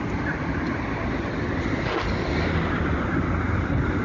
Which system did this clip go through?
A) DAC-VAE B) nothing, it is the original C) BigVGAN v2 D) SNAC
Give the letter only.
B